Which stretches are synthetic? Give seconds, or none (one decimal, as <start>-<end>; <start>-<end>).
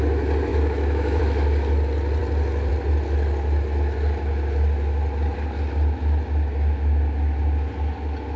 0.5-1.2